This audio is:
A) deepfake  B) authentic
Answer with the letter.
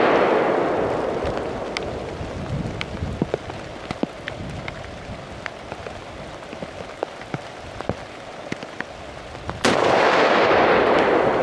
B